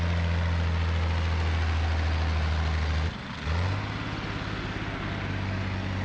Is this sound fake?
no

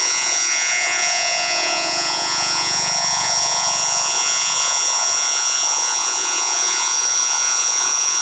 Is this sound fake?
yes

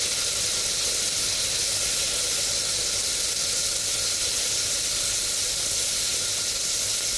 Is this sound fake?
no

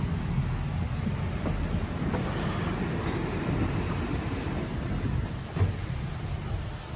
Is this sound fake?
no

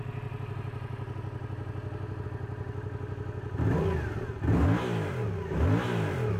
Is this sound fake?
no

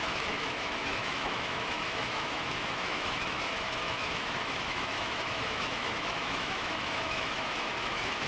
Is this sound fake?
yes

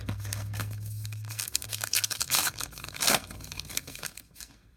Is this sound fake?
yes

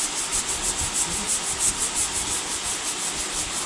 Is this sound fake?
no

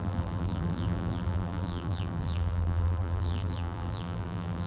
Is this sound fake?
yes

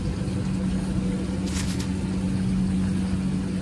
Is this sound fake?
no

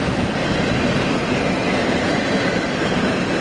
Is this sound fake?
no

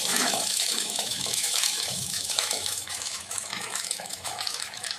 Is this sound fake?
yes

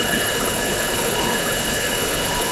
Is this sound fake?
yes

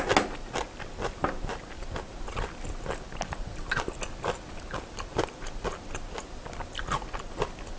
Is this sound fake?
no